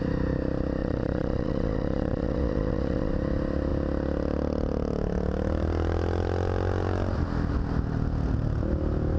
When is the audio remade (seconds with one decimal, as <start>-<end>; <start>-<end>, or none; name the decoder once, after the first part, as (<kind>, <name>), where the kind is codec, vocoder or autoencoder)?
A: 0.8-3.1 (vocoder, Vocos)